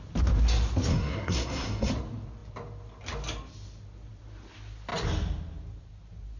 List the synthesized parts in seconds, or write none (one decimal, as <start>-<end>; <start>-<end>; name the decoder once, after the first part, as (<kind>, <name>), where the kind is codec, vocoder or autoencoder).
0.9-1.9 (codec, SNAC)